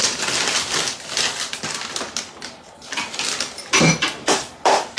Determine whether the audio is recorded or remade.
recorded